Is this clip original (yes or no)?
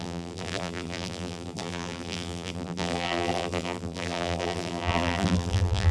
no